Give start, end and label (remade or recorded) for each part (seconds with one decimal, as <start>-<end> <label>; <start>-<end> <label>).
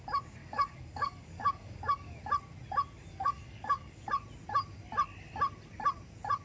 0.0-0.4 recorded; 0.4-2.2 remade; 2.2-3.1 recorded; 3.1-4.1 remade; 4.1-6.4 recorded